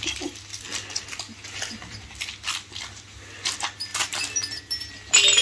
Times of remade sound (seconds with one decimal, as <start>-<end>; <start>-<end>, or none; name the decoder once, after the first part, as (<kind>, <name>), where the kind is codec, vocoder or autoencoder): 0.0-0.7 (vocoder, BigVGAN v2); 1.6-5.4